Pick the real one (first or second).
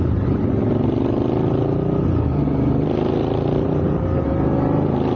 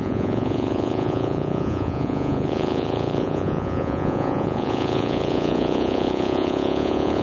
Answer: first